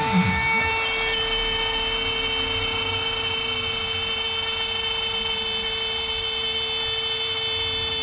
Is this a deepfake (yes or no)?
no